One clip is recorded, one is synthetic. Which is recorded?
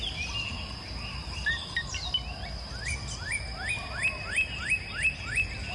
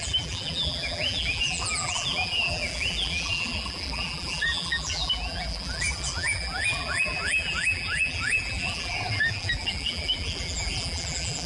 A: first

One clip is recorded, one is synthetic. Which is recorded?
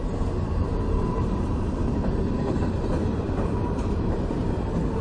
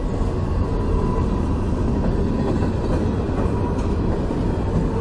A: second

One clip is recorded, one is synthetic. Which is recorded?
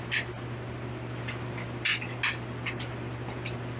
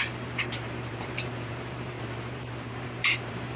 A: first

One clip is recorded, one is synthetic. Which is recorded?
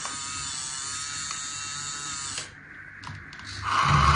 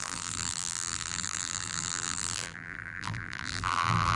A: first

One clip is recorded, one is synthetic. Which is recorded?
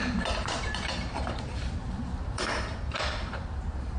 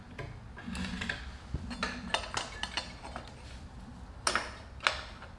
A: second